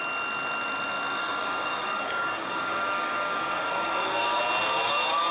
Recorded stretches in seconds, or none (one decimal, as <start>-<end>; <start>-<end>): 0.0-1.2; 4.4-5.3